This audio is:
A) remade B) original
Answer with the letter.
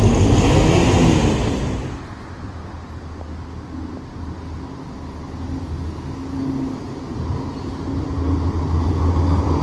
B